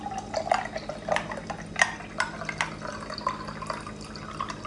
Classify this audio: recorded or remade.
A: recorded